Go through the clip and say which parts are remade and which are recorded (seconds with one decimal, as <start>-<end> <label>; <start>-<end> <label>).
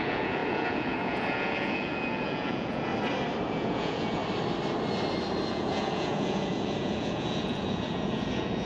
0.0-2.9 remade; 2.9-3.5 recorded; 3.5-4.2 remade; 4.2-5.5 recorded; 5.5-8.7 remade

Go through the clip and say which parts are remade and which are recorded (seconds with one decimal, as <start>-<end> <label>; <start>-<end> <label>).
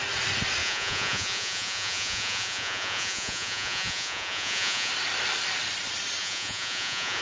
0.0-0.6 recorded; 0.6-4.9 remade; 4.9-6.2 recorded; 6.2-7.2 remade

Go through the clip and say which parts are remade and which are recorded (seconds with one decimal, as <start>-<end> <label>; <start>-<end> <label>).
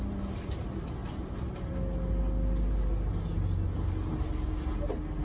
0.0-5.2 recorded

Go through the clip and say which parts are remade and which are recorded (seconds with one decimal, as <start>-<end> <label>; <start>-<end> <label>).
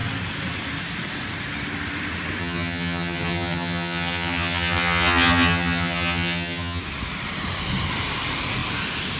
0.0-2.4 recorded; 2.4-6.8 remade; 6.8-9.2 recorded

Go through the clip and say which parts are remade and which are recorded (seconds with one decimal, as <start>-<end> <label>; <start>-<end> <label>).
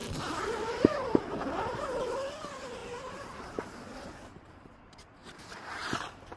0.0-2.0 remade; 2.0-2.8 recorded; 2.8-3.4 remade; 3.4-3.9 recorded; 3.9-4.7 remade; 4.7-5.2 recorded; 5.2-6.4 remade